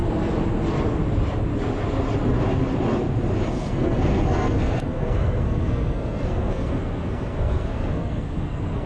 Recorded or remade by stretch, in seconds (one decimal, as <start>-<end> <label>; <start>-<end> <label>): 0.0-3.5 recorded; 3.5-8.9 remade